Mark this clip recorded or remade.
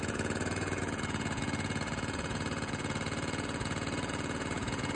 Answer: remade